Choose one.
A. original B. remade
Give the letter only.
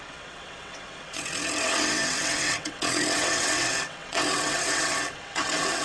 B